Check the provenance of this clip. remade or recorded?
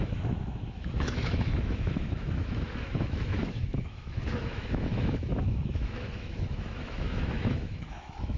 remade